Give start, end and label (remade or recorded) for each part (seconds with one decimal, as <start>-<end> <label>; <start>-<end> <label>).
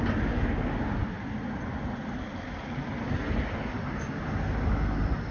0.0-5.3 recorded